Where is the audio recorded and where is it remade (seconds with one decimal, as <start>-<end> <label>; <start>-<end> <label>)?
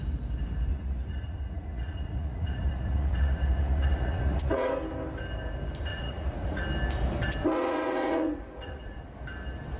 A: 0.0-0.7 recorded; 0.7-4.7 remade; 4.7-5.9 recorded; 5.9-6.6 remade; 6.6-7.4 recorded; 7.4-9.0 remade; 9.0-9.8 recorded